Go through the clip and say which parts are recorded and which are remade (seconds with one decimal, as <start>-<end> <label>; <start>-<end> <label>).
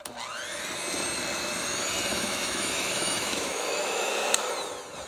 0.0-2.1 recorded; 2.1-4.1 remade; 4.1-5.1 recorded